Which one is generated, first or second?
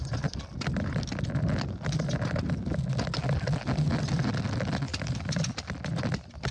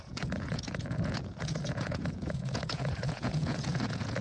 second